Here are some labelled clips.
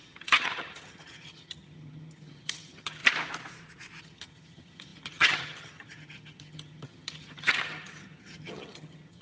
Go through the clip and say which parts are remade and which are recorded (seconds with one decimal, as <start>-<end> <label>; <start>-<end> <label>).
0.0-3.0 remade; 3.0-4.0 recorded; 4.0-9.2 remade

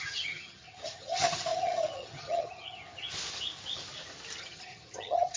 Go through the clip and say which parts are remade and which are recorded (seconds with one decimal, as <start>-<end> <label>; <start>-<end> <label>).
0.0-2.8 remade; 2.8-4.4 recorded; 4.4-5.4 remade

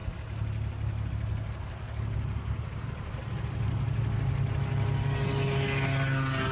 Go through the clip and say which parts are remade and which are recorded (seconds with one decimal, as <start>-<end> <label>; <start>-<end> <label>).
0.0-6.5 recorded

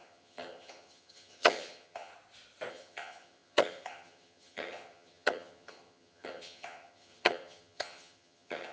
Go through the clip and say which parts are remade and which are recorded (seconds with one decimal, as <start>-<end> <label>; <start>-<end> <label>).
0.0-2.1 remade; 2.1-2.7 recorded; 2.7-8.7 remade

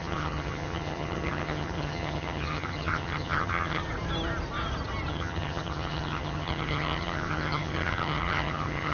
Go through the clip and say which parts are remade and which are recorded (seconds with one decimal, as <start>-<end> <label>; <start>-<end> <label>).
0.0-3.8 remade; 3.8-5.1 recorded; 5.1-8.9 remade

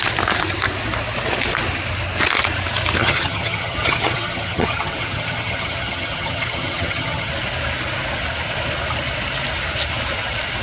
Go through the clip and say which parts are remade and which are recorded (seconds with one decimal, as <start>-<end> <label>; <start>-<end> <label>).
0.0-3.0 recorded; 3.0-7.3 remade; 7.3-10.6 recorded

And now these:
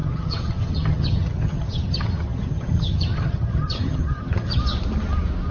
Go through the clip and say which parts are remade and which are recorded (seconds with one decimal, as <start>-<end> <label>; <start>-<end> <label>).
0.0-4.6 remade; 4.6-5.5 recorded